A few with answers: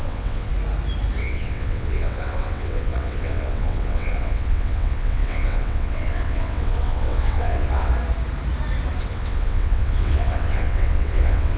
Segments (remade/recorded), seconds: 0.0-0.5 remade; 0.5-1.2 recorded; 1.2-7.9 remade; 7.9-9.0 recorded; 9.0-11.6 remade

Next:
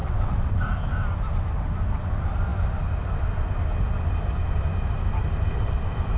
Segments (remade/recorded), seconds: 0.0-0.6 remade; 0.6-6.2 recorded

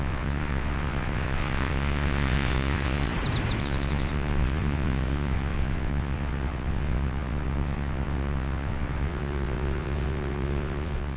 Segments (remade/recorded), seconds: 0.0-3.1 remade; 3.1-3.6 recorded; 3.6-11.2 remade

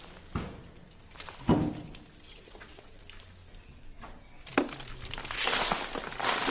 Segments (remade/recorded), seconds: 0.0-2.3 recorded; 2.3-3.0 remade; 3.0-6.5 recorded

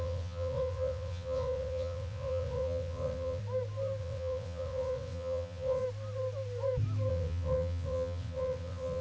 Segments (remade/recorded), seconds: 0.0-3.4 remade; 3.4-4.0 recorded; 4.0-5.8 remade; 5.8-7.1 recorded; 7.1-9.0 remade